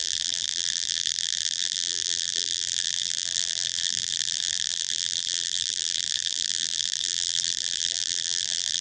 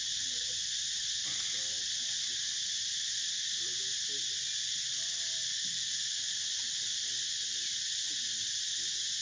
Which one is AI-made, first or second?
first